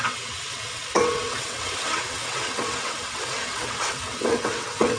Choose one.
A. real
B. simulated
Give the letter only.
B